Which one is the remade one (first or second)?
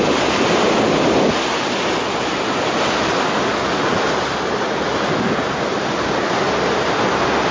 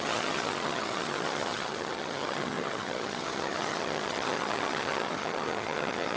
second